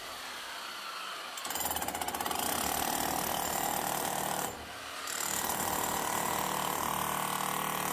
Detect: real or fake fake